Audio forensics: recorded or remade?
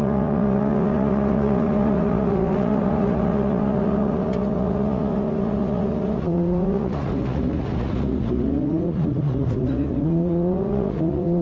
remade